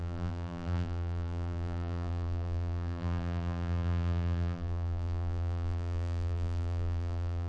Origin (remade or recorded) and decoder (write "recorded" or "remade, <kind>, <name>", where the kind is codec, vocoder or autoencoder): remade, vocoder, BigVGAN v2